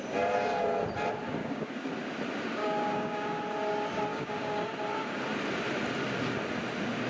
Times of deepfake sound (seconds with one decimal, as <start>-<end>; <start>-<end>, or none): 1.4-1.9; 2.6-3.4; 4.1-4.7

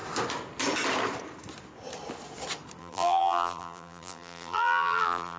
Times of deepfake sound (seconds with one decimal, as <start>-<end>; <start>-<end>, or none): 2.8-5.4

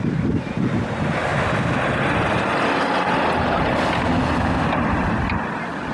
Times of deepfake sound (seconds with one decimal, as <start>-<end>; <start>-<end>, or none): none

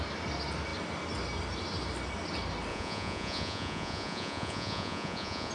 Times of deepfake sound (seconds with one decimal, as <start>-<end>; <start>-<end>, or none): 2.7-5.5

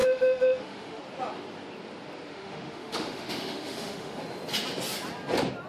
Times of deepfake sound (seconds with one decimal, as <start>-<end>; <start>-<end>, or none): 0.0-1.0; 2.3-4.2

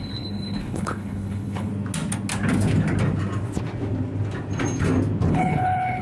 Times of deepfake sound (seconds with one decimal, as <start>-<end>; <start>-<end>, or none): 0.0-1.7; 5.3-6.0

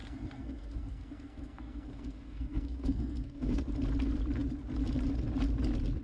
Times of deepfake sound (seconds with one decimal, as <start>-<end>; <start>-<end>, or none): 0.0-3.6